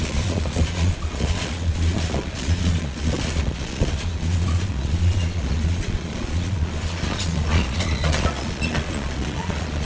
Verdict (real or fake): fake